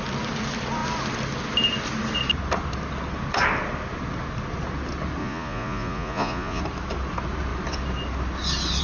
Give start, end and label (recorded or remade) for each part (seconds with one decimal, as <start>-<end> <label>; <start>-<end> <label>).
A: 0.0-5.2 recorded; 5.2-6.6 remade; 6.6-8.8 recorded